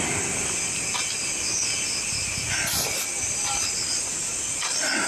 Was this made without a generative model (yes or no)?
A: yes